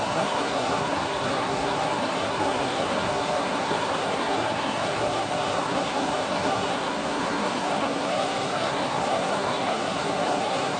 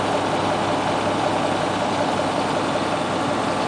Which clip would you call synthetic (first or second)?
first